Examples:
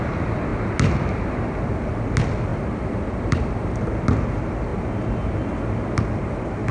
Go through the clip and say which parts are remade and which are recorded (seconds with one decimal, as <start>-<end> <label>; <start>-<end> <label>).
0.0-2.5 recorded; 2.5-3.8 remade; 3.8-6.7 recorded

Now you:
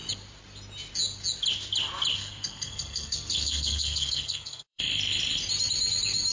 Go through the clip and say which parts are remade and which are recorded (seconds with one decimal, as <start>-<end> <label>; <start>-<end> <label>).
0.0-2.2 recorded; 2.2-4.8 remade; 4.8-6.3 recorded

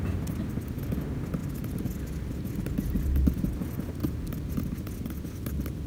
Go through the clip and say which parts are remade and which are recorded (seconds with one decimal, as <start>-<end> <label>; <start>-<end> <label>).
0.0-4.0 recorded; 4.0-4.6 remade; 4.6-5.9 recorded